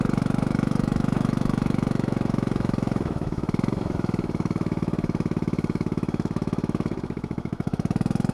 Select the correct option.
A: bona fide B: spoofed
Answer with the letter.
B